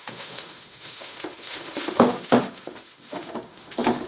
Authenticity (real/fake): fake